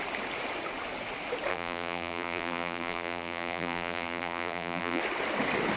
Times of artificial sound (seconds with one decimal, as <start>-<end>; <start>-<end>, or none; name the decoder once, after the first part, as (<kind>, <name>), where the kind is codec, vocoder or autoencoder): 1.5-5.0 (vocoder, BigVGAN v2)